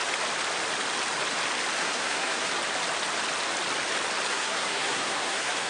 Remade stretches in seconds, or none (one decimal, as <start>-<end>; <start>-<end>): 1.8-2.5; 4.3-5.7